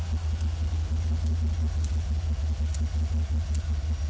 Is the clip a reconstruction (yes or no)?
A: no